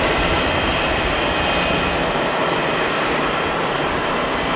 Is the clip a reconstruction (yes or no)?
no